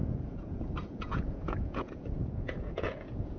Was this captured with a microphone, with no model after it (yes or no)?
no